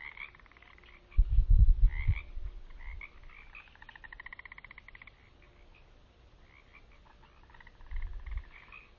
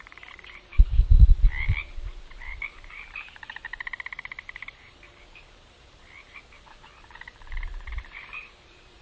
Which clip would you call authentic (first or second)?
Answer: first